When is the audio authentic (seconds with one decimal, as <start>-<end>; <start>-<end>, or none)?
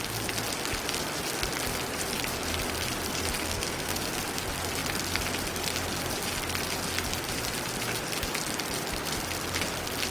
0.0-3.4; 4.0-10.1